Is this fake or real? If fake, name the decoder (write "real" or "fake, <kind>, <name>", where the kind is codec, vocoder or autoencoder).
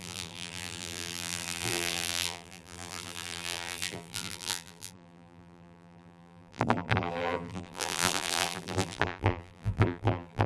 fake, vocoder, BigVGAN v2